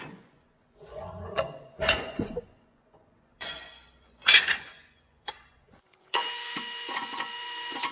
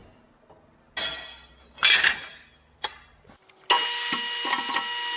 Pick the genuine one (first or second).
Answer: second